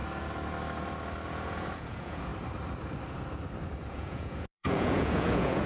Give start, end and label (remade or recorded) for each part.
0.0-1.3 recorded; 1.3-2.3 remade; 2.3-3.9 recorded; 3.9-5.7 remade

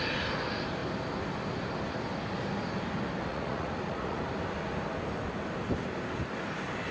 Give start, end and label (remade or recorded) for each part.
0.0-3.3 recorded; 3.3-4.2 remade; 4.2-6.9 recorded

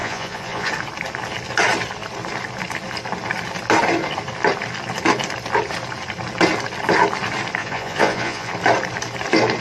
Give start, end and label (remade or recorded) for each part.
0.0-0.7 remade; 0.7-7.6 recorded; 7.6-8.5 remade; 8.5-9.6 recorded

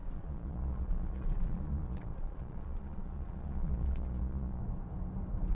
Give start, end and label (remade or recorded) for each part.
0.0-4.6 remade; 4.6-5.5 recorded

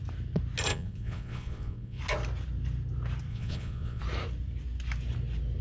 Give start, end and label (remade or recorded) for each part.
0.0-0.7 recorded; 0.7-2.0 remade; 2.0-3.3 recorded; 3.3-4.0 remade; 4.0-5.6 recorded

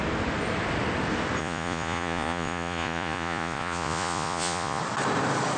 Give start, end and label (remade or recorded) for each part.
0.0-1.4 recorded; 1.4-4.8 remade; 4.8-5.6 recorded